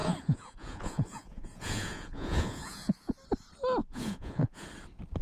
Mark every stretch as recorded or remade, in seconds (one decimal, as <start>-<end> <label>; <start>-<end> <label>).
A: 0.0-3.1 remade; 3.1-3.8 recorded; 3.8-4.7 remade; 4.7-5.2 recorded